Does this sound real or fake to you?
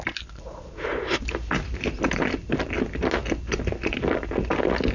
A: real